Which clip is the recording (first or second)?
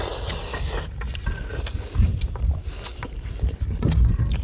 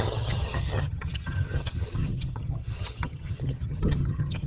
first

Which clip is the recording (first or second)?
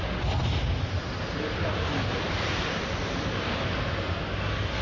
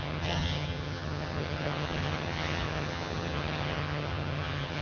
first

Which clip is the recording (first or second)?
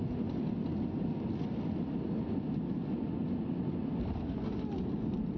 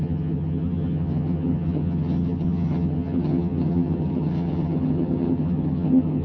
first